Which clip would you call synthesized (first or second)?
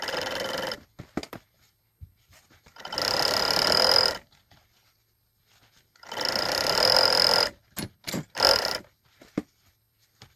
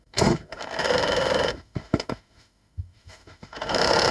second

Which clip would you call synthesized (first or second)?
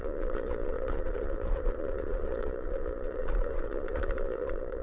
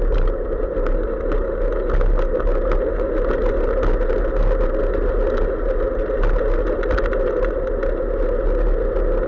first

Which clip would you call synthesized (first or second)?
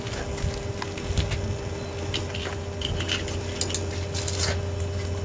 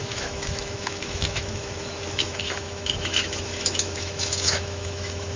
second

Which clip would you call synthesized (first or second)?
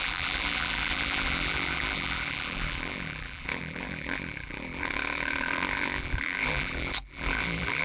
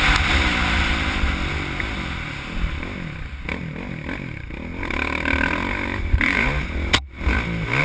first